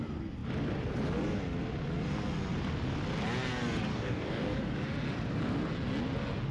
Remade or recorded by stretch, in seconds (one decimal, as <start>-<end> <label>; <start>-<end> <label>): 0.0-3.9 recorded; 3.9-4.6 remade; 4.6-6.5 recorded